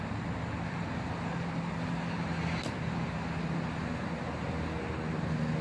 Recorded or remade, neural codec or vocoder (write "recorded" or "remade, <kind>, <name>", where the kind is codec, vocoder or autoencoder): recorded